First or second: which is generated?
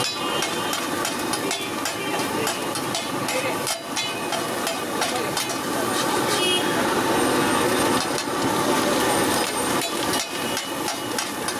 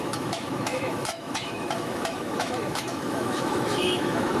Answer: second